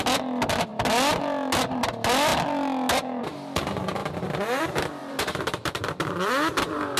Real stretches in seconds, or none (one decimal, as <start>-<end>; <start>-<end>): 0.0-5.0; 6.3-7.0